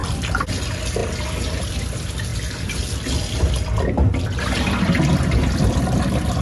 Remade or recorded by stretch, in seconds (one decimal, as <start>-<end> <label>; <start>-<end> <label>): 0.0-6.4 recorded